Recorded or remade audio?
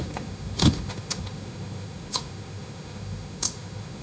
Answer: remade